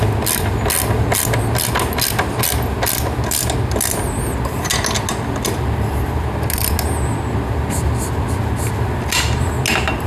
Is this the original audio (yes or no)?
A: yes